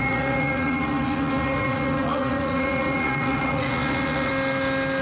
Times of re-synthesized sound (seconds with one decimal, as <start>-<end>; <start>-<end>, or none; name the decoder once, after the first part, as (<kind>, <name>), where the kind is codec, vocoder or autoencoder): 0.0-4.3 (vocoder, Vocos)

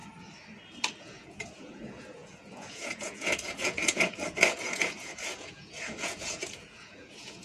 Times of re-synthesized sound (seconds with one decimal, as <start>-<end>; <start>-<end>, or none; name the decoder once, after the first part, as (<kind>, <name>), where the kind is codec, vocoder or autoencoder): 1.0-7.4 (vocoder, Vocos)